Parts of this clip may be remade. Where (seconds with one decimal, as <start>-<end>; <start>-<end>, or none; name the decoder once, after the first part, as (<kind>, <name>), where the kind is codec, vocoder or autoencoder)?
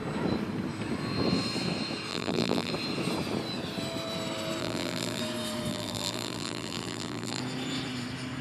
2.1-2.7 (vocoder, BigVGAN v2); 4.6-5.2; 5.7-7.4